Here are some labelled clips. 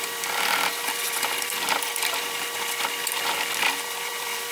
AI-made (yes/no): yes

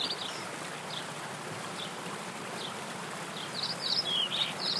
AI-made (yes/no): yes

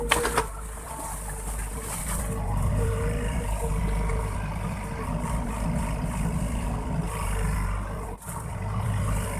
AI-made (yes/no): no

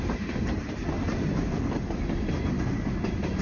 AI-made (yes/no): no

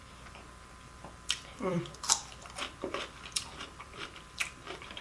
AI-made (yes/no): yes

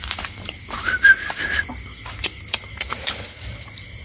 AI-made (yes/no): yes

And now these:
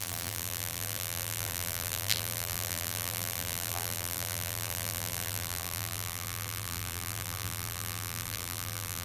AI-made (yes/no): yes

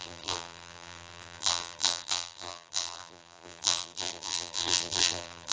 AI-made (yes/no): yes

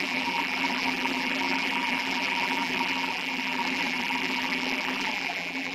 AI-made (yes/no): yes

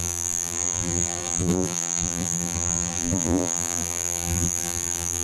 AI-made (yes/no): yes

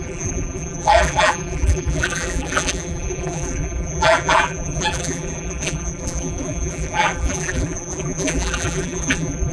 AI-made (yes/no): yes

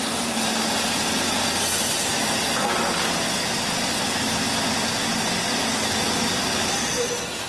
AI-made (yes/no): no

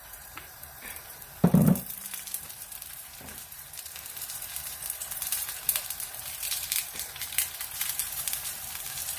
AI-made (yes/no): yes